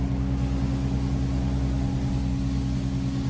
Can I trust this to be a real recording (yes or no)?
yes